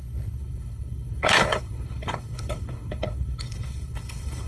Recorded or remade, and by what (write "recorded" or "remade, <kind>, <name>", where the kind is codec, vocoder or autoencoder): remade, codec, HILCodec